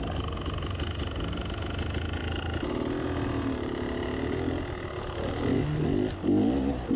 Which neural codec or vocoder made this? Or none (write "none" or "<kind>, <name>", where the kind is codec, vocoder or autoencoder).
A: none